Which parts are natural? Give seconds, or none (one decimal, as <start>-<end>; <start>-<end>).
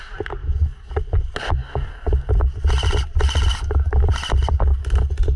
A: 0.0-0.4; 0.9-1.6; 2.3-3.5; 4.1-5.4